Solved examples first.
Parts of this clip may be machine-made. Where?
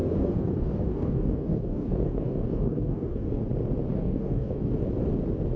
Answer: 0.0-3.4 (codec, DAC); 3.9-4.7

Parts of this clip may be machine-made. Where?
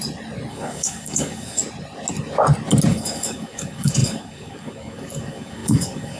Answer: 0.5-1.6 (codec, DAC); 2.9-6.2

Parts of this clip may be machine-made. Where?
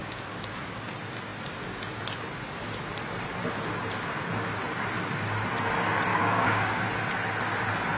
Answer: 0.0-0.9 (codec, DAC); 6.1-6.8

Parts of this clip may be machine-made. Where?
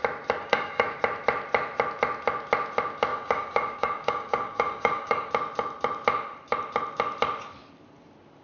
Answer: 0.4-1.0 (codec, DAC); 3.1-5.3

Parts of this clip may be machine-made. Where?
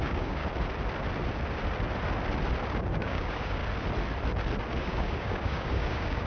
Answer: 0.0-0.4 (codec, DAC); 2.9-3.6; 4.8-6.3